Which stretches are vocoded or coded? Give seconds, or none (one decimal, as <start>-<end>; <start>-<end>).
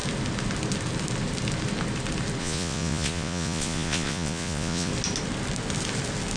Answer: 2.4-4.9